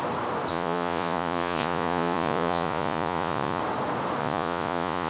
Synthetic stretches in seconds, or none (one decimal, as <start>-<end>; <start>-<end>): 0.5-3.6; 4.2-5.1